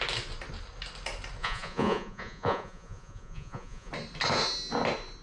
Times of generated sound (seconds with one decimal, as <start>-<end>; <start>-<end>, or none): 1.4-3.9